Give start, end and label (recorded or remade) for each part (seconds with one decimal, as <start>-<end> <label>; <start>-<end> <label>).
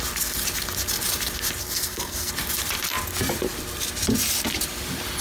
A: 0.0-1.6 recorded; 1.6-2.3 remade; 2.3-5.2 recorded